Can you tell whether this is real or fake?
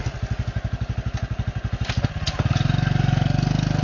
real